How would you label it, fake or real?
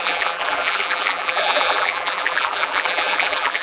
fake